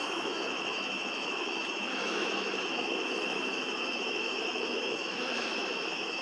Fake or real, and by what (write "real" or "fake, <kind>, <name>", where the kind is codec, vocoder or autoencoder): fake, autoencoder, DAC-VAE